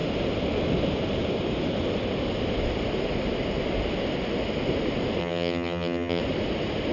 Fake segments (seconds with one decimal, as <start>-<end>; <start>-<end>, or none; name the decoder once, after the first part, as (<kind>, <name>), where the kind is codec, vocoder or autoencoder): 5.2-6.2 (vocoder, HiFi-GAN)